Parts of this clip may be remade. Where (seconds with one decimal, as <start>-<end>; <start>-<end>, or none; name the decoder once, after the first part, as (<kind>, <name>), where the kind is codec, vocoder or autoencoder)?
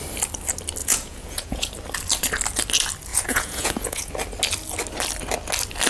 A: 0.8-1.7 (vocoder, Vocos); 3.1-4.1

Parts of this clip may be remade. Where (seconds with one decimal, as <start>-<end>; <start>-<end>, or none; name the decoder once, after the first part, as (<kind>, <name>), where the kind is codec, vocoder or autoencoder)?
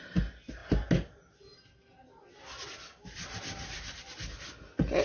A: none